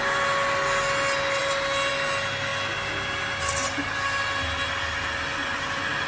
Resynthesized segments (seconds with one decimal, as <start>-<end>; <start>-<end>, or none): none